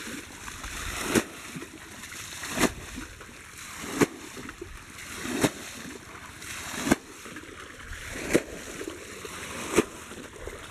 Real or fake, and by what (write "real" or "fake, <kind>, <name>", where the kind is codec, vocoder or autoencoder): real